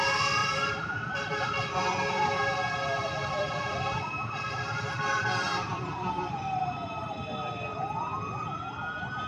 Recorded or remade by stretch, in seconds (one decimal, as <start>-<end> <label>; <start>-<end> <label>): 0.0-0.4 recorded; 0.4-1.4 remade; 1.4-2.9 recorded; 2.9-8.0 remade; 8.0-9.3 recorded